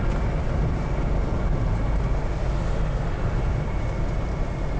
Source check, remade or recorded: recorded